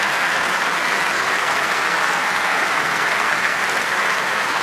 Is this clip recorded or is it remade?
remade